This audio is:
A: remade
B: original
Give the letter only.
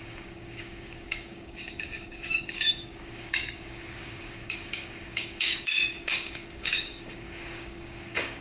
A